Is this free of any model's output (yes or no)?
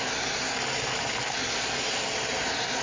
yes